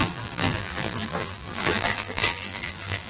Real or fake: fake